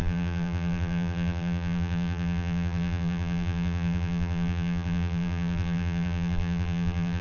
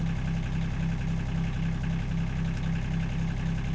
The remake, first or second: first